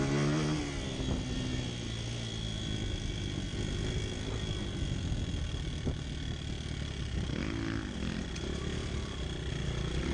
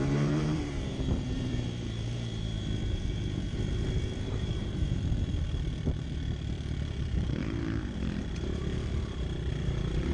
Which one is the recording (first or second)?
first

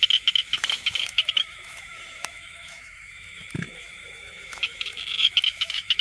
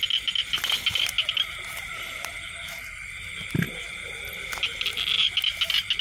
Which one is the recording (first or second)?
second